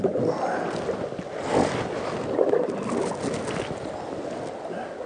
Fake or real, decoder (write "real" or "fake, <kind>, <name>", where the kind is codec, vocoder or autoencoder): real